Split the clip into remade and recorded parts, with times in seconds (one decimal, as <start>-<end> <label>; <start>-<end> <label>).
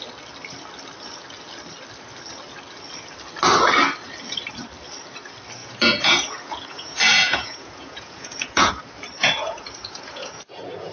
0.0-5.6 recorded; 5.6-8.7 remade; 8.7-9.2 recorded; 9.2-10.9 remade